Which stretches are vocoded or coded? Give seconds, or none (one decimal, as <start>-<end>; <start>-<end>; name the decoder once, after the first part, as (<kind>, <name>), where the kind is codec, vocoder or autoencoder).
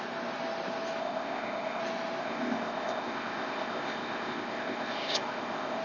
1.0-1.8 (codec, ZipCodec); 2.2-5.8